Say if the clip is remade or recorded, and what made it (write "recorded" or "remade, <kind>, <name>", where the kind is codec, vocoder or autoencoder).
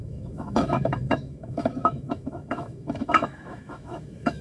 remade, autoencoder, DAC-VAE